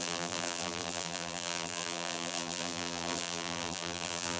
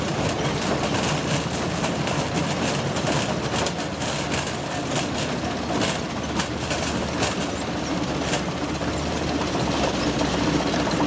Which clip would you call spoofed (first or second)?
first